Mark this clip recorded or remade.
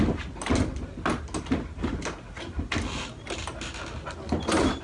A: recorded